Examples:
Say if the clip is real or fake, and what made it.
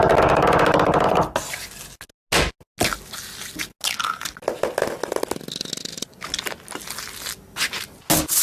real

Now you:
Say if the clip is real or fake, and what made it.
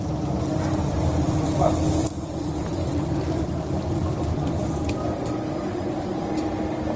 real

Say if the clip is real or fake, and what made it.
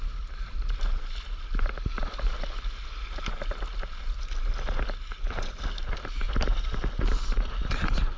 real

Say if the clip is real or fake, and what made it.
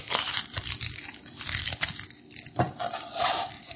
fake, vocoder, BigVGAN v2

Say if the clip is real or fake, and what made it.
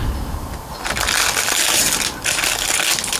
real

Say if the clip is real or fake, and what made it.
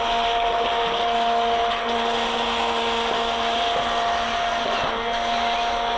real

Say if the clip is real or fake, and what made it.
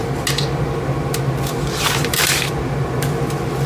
real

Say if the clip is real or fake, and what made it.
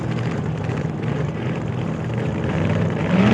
fake, vocoder, BigVGAN v2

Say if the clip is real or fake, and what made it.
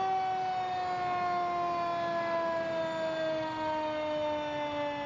real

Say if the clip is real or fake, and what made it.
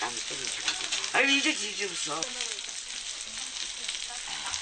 real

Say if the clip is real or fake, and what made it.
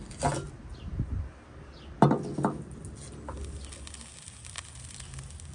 real